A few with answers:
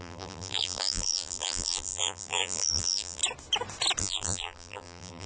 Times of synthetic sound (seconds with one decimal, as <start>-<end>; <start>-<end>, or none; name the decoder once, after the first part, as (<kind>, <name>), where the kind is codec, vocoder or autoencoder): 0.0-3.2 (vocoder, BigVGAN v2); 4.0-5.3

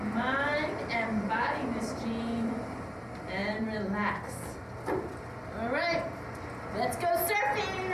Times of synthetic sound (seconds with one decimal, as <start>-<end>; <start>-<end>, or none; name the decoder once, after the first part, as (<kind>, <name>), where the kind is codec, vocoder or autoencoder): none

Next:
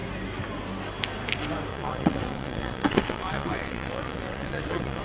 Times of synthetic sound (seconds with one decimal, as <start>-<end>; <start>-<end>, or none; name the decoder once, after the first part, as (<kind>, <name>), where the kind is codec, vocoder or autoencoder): 1.7-5.0 (vocoder, WaveNeXt)

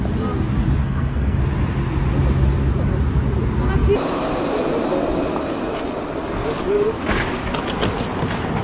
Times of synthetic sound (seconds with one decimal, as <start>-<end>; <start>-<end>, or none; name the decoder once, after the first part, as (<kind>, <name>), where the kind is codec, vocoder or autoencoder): 0.8-1.4 (codec, SNAC)